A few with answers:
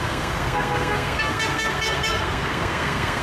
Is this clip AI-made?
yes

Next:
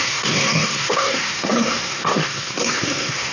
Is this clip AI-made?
yes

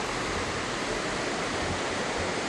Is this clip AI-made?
no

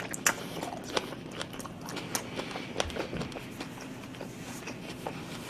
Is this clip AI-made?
no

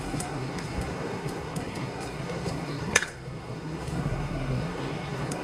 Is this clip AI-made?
yes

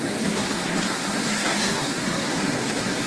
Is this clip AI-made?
yes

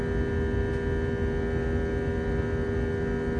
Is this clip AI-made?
no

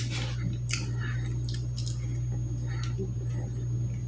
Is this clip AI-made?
no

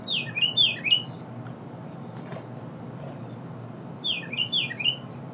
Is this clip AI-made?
no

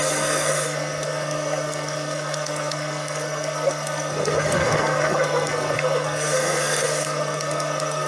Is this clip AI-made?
yes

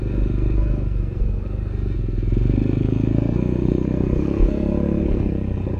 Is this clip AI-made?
yes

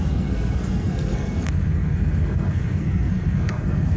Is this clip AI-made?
yes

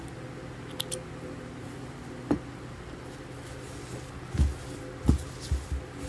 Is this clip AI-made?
no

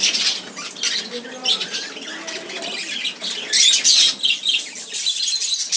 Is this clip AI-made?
no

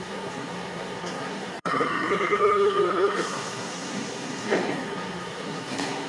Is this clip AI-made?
yes